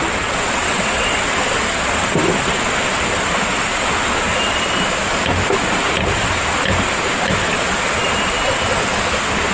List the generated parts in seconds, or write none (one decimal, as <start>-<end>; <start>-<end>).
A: 0.6-1.2